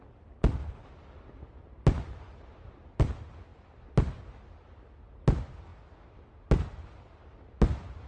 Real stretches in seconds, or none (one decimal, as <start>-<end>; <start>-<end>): 0.0-8.1